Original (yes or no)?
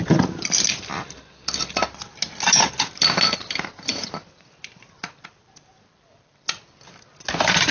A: yes